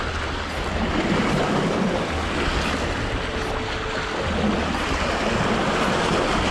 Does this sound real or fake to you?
real